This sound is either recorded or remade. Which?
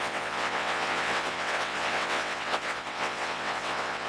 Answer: remade